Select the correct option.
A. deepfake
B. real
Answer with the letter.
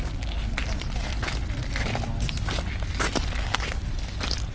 B